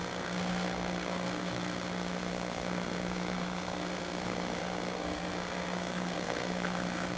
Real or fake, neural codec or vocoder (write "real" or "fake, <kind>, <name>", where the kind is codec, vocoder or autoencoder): fake, codec, SNAC